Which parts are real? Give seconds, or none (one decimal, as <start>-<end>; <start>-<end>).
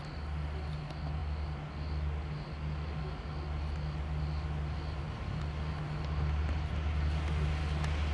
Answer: 0.0-8.1